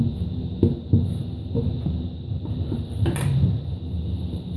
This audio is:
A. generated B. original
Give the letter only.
B